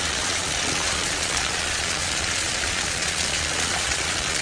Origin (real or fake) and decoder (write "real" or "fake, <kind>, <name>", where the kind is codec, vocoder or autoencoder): fake, vocoder, Vocos